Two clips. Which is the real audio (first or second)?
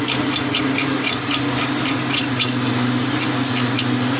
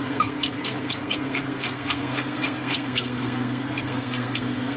first